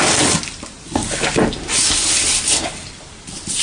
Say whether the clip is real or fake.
fake